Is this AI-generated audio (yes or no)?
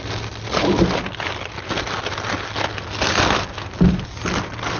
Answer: no